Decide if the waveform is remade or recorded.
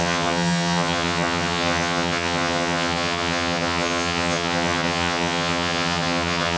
remade